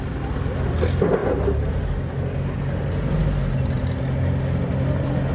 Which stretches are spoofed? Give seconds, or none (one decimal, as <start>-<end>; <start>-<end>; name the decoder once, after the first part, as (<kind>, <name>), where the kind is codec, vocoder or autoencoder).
none